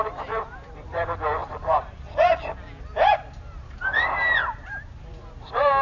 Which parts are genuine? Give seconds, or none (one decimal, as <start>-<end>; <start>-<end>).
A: 0.0-5.8